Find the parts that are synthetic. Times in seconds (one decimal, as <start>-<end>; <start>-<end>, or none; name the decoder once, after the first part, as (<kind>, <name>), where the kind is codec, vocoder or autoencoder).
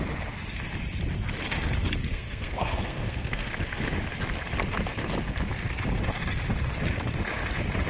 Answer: 2.0-3.5 (codec, SNAC)